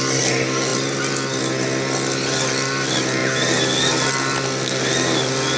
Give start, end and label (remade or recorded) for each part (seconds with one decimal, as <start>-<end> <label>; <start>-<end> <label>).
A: 0.0-5.6 recorded